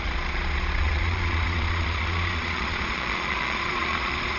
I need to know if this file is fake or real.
fake